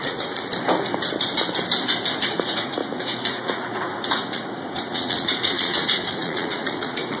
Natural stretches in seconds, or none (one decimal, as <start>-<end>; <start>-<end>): 0.5-2.1